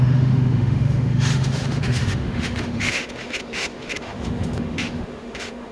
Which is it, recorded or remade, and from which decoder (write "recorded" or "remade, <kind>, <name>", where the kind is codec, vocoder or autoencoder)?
remade, autoencoder, DAC-VAE